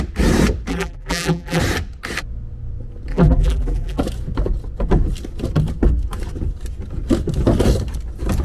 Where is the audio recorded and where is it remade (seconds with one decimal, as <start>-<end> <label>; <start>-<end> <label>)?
0.0-0.7 recorded; 0.7-1.6 remade; 1.6-3.1 recorded; 3.1-4.0 remade; 4.0-8.4 recorded